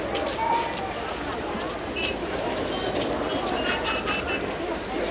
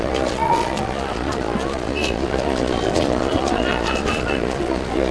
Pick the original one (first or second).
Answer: first